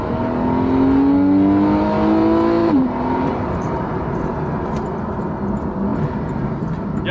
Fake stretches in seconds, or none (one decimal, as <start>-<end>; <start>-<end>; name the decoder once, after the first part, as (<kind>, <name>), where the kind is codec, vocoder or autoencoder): 2.6-4.5 (vocoder, BigVGAN v2)